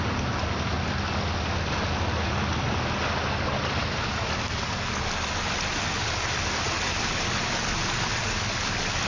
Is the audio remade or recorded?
recorded